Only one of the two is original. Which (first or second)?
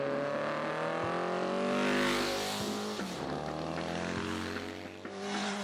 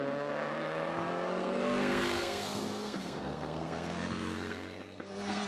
first